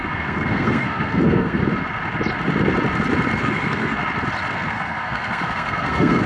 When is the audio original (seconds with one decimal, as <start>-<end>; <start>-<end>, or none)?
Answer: 1.6-3.4; 4.0-4.5